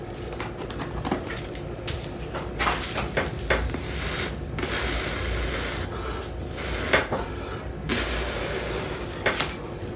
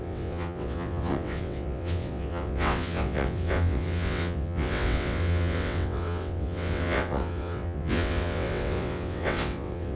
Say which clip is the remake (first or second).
second